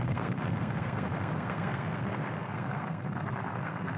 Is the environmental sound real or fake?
fake